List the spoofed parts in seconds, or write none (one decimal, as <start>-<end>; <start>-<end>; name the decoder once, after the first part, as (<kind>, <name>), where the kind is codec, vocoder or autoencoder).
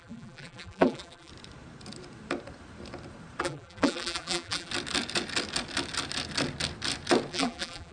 0.0-1.3 (vocoder, BigVGAN v2); 3.4-4.7; 7.3-7.9